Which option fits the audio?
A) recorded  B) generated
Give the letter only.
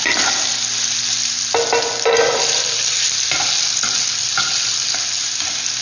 A